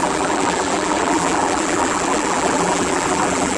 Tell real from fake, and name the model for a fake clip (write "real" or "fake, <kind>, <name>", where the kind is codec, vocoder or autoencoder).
fake, vocoder, BigVGAN v2